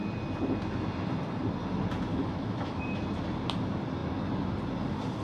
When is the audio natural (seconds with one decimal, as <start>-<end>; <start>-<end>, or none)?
0.0-2.1; 2.8-5.2